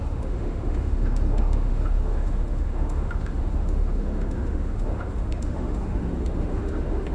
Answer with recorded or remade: remade